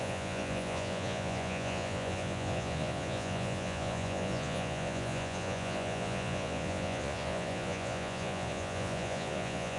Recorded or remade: remade